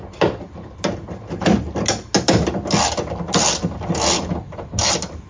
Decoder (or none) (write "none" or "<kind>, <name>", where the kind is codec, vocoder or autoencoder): none